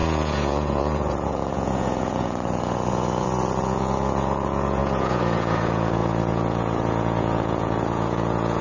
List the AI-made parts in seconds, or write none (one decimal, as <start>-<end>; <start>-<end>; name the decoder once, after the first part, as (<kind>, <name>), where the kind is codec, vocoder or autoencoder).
0.0-8.6 (vocoder, Vocos)